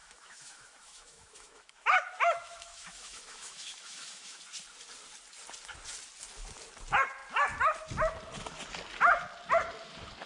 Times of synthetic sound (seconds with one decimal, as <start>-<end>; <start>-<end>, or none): 0.0-4.4